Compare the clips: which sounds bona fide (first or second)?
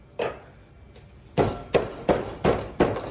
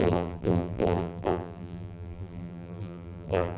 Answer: first